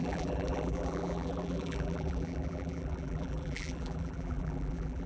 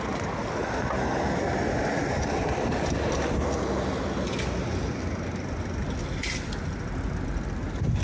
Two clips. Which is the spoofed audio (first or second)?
first